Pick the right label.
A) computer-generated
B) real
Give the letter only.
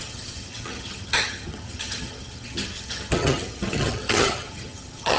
A